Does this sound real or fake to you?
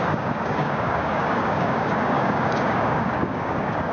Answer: fake